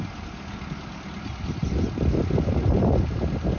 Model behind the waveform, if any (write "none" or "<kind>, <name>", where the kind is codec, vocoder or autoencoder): none